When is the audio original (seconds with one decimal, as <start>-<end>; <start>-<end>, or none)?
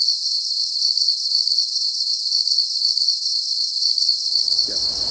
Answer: 0.0-5.1